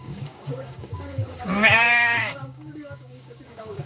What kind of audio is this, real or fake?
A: fake